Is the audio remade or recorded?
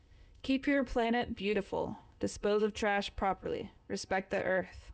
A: remade